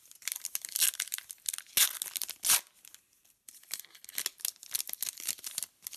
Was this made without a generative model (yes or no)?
yes